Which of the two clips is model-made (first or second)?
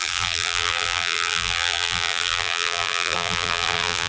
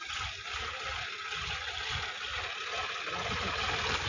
first